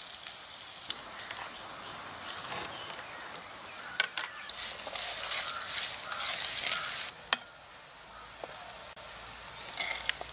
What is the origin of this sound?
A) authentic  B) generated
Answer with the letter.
A